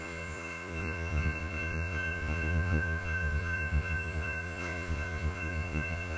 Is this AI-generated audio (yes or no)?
yes